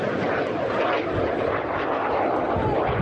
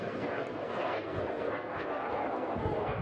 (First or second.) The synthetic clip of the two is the second